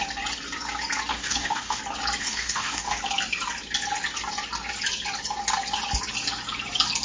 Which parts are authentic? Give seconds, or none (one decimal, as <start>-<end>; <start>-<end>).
0.0-1.1; 1.8-2.2; 3.0-7.0